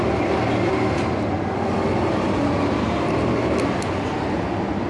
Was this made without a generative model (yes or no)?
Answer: yes